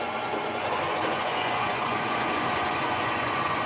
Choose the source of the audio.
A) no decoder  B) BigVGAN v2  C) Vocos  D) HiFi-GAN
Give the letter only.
C